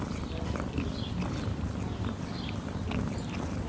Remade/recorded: recorded